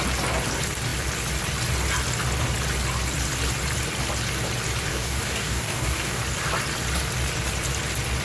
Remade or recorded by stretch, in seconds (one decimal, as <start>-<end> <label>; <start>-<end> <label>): 0.0-4.9 recorded; 4.9-6.2 remade; 6.2-8.2 recorded